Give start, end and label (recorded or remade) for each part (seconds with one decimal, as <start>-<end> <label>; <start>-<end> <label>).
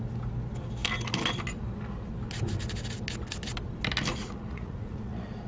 0.0-4.1 recorded; 4.1-5.5 remade